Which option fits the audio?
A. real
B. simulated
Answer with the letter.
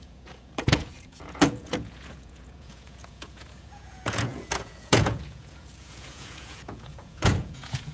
B